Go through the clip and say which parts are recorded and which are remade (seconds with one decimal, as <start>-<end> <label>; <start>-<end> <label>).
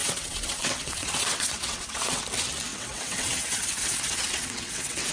0.0-2.2 remade; 2.2-2.7 recorded; 2.7-5.1 remade